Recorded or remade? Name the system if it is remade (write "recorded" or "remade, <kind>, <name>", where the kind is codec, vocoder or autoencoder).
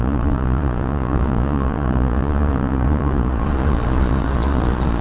remade, vocoder, Vocos